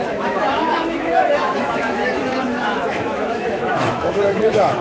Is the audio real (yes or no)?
no